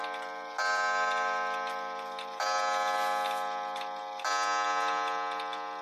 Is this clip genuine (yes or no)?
yes